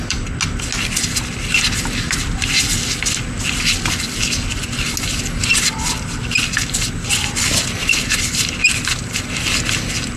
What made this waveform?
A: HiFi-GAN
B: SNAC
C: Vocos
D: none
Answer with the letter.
D